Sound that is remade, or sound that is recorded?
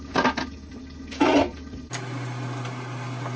recorded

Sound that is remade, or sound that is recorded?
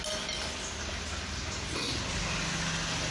recorded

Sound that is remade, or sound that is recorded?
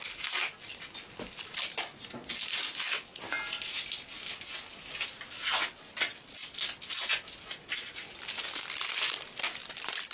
recorded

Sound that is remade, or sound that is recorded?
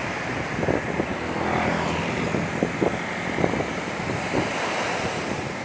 recorded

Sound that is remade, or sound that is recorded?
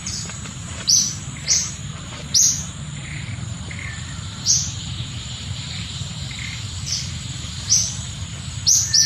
remade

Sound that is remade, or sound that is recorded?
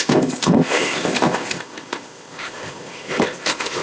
remade